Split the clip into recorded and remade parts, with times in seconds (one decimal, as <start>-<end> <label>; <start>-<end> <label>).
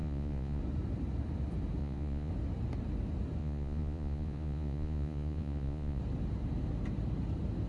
0.0-0.6 remade; 0.6-1.8 recorded; 1.8-2.3 remade; 2.3-3.4 recorded; 3.4-6.0 remade; 6.0-7.7 recorded